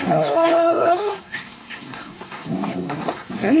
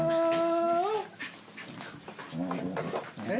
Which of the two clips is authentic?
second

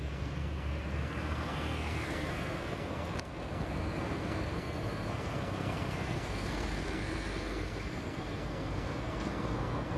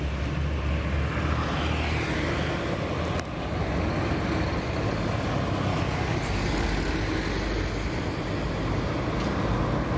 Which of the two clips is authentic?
second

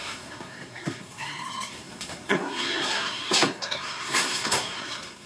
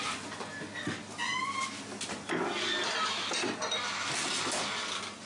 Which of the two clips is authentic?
second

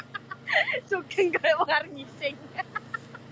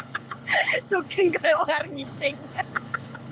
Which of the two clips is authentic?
first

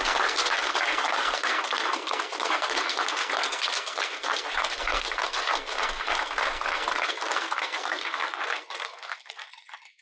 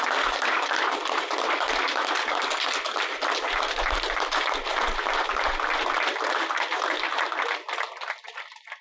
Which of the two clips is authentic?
second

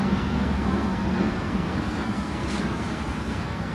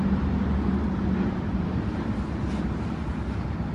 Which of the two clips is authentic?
second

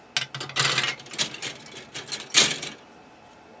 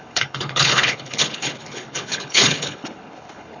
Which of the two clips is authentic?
first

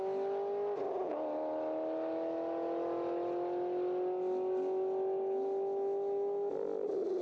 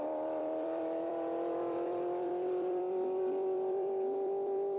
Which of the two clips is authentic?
first